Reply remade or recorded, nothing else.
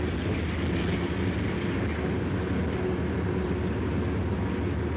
recorded